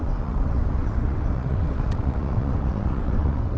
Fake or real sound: fake